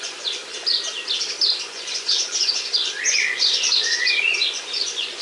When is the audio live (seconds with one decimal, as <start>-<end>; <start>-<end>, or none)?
0.4-1.6